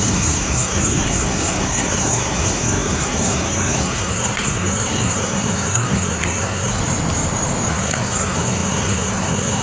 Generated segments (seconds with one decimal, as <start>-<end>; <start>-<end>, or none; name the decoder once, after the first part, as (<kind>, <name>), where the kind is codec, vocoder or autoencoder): 0.0-6.8 (codec, SNAC); 7.7-9.6